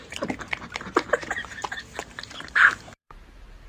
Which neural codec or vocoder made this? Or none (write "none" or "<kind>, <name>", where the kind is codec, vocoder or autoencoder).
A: vocoder, BigVGAN v2